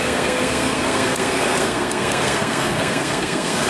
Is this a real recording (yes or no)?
no